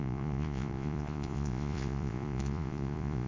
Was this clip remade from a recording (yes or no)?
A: yes